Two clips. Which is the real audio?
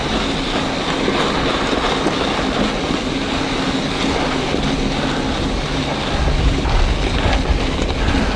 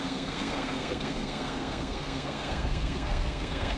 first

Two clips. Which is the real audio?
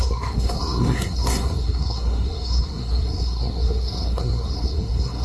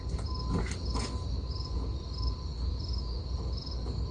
second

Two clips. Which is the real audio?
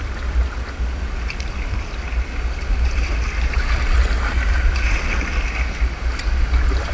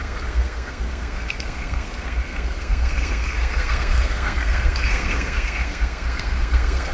first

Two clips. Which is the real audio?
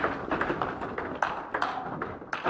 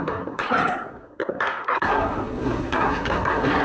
first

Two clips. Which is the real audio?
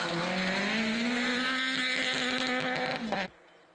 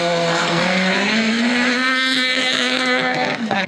first